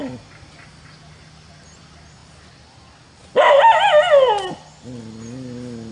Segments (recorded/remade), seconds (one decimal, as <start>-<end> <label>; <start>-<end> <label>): 0.0-5.9 recorded